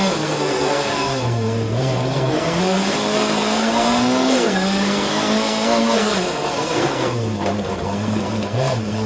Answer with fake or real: fake